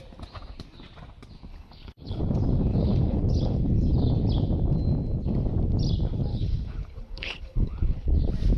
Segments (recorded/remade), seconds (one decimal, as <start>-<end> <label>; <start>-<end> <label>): 0.0-1.5 recorded; 1.5-2.2 remade; 2.2-2.7 recorded; 2.7-3.6 remade; 3.6-6.3 recorded; 6.3-8.2 remade; 8.2-8.6 recorded